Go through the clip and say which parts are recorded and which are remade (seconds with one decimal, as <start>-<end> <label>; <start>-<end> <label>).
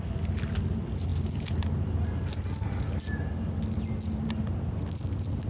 0.0-5.5 recorded